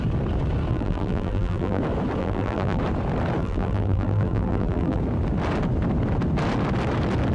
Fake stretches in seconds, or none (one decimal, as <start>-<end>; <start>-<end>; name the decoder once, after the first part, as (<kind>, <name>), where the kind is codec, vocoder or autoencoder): 0.7-1.8 (vocoder, BigVGAN v2); 2.2-2.8; 3.4-5.0